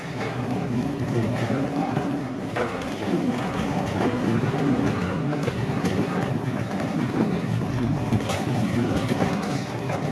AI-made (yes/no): yes